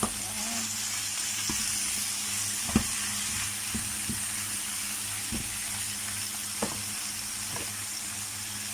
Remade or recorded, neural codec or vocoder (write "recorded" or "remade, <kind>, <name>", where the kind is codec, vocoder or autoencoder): recorded